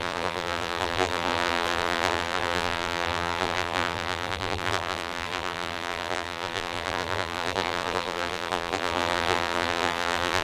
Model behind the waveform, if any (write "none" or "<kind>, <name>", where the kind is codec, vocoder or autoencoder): vocoder, BigVGAN v2